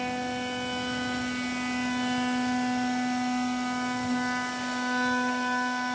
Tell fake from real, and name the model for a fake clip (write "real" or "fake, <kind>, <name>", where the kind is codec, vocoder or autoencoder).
real